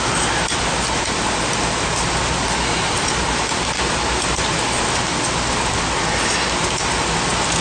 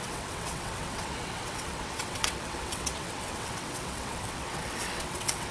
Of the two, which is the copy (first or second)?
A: second